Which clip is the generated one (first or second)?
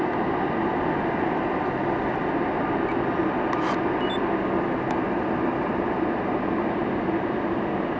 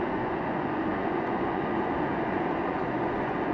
second